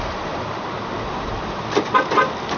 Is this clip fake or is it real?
real